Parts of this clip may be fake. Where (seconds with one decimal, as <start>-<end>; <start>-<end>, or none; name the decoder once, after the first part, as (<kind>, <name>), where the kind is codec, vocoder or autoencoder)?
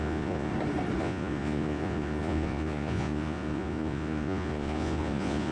0.0-0.5 (vocoder, Vocos); 1.0-5.5